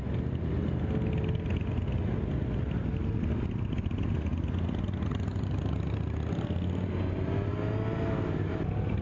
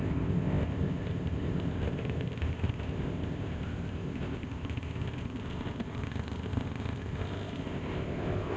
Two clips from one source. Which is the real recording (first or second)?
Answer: first